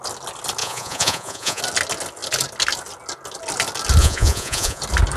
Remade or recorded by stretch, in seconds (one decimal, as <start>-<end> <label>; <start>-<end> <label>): 0.0-0.6 recorded; 0.6-1.6 remade; 1.6-4.0 recorded; 4.0-4.8 remade; 4.8-5.2 recorded